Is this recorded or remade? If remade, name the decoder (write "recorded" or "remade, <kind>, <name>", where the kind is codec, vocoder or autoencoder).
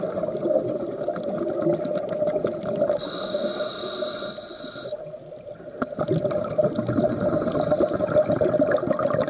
recorded